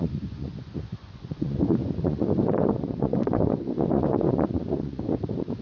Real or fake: fake